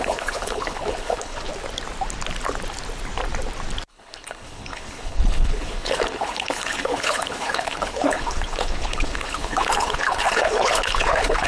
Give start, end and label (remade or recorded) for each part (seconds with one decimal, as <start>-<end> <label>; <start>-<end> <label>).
0.0-1.5 remade; 1.5-3.9 recorded; 3.9-11.5 remade